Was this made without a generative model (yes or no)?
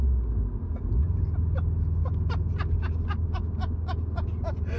yes